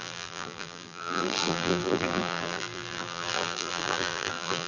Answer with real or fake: fake